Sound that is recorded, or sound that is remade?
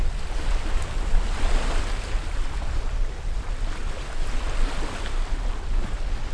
recorded